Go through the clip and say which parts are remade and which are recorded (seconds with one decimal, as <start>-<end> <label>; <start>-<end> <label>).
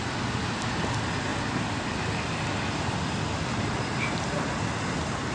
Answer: 0.0-5.3 recorded